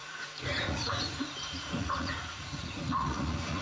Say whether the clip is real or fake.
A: fake